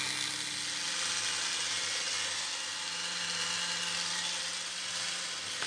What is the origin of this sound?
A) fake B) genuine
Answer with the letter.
B